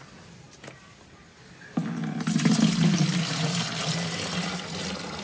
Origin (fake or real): real